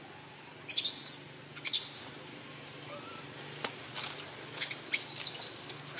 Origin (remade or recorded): recorded